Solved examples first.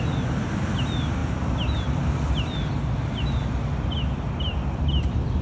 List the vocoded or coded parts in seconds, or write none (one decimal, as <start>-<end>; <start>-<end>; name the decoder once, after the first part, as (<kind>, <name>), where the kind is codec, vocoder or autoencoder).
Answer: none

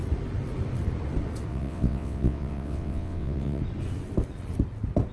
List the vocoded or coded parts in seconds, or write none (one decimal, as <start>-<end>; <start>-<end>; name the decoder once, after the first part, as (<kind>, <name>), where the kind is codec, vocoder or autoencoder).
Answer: 1.5-3.6 (vocoder, WaveNeXt)

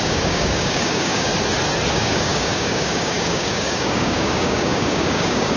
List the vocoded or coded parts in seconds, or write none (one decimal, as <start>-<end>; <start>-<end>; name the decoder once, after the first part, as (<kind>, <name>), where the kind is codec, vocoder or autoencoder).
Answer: 0.0-1.3 (codec, DAC); 1.9-5.6

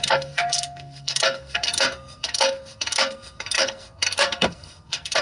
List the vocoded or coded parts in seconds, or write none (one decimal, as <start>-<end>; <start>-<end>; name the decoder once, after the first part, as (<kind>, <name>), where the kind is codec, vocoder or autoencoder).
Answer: 0.0-5.2 (codec, SNAC)

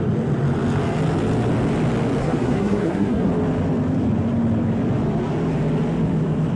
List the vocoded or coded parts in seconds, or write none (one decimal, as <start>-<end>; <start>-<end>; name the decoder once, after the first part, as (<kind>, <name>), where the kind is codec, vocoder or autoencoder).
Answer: 2.2-3.3 (codec, SNAC)